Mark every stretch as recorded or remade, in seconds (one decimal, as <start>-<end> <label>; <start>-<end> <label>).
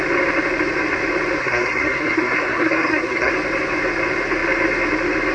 0.0-1.4 recorded; 1.4-3.3 remade; 3.3-5.3 recorded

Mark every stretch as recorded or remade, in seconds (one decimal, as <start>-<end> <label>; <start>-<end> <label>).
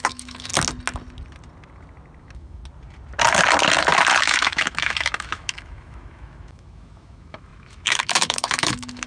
0.0-0.5 remade; 0.5-2.2 recorded; 2.2-2.6 remade; 2.6-4.2 recorded; 4.2-9.1 remade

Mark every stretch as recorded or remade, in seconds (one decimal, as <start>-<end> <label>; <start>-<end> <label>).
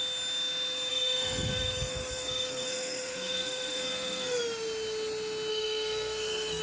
0.0-0.9 recorded; 0.9-4.4 remade; 4.4-5.5 recorded; 5.5-6.6 remade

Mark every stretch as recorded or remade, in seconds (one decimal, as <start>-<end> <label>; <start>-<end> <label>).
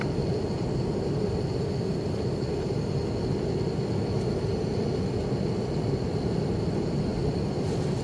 0.0-8.0 recorded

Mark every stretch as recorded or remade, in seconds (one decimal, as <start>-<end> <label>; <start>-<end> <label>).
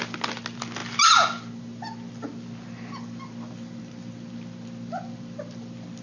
0.0-6.0 recorded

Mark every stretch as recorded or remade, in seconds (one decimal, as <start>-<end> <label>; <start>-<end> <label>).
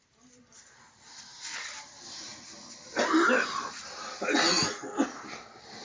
0.0-5.8 recorded